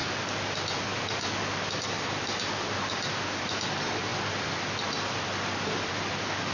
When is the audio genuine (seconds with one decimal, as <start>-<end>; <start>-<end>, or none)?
0.0-6.5